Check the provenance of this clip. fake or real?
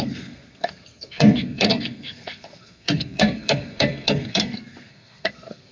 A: fake